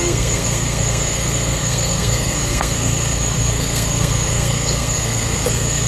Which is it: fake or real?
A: fake